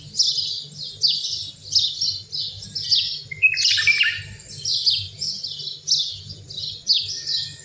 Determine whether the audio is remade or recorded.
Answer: recorded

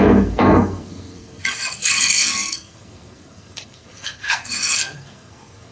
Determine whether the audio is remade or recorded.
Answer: remade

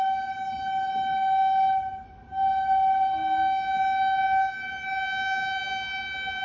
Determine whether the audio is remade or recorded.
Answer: recorded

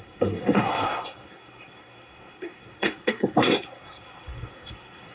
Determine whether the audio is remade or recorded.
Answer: remade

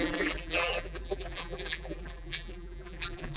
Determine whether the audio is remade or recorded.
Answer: remade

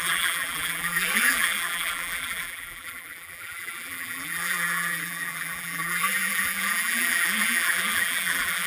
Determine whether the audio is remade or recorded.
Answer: remade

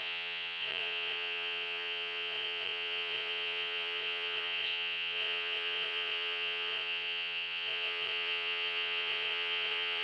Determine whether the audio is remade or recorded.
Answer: remade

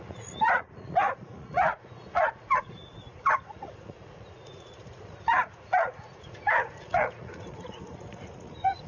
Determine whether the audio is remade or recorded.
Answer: remade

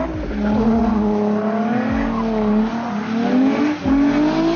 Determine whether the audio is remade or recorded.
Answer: recorded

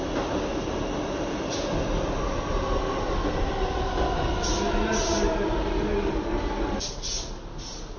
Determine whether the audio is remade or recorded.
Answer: recorded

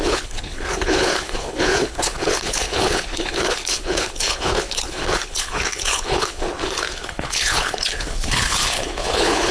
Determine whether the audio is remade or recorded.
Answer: remade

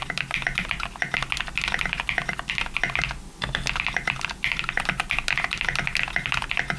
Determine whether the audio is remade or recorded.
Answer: recorded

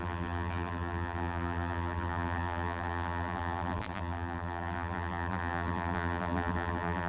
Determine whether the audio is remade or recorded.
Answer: remade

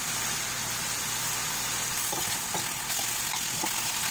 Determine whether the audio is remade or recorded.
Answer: recorded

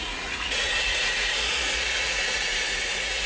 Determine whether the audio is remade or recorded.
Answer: remade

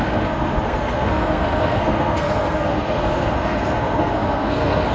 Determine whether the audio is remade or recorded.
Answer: remade